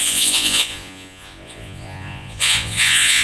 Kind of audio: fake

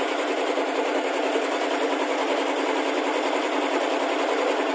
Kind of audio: real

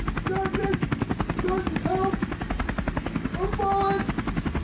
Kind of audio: real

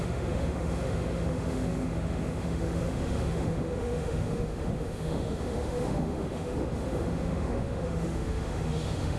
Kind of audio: fake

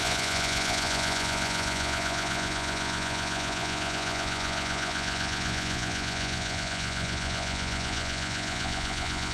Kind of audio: fake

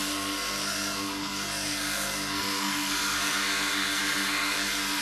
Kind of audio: fake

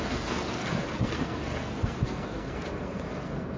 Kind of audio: fake